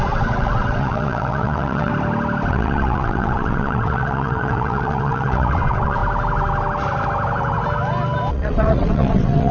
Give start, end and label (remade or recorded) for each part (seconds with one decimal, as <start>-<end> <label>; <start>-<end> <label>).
0.0-1.9 remade; 1.9-2.5 recorded; 2.5-6.0 remade; 6.0-8.3 recorded; 8.3-9.5 remade